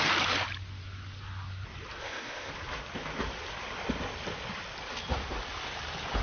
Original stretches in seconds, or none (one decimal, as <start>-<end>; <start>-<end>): 0.0-2.0; 2.5-6.2